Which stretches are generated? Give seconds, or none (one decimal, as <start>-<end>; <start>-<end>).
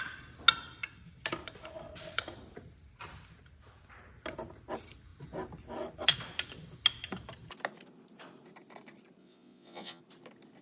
9.2-10.0